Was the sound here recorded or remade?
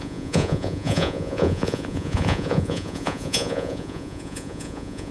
remade